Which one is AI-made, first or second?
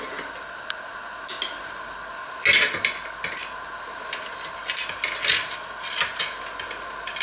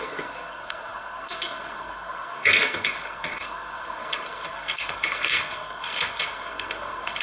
second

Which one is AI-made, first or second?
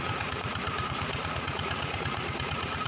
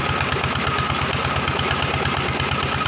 first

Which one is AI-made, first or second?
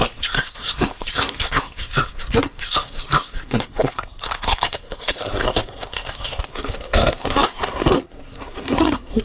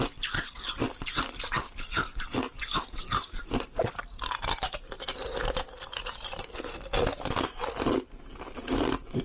first